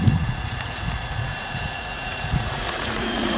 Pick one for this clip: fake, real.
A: fake